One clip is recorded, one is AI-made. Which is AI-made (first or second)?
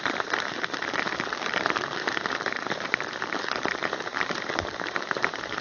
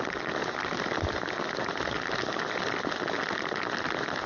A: first